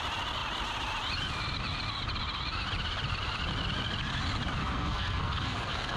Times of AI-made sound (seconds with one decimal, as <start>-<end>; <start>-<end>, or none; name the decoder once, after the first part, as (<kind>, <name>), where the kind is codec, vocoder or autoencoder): 4.6-6.0 (codec, SNAC)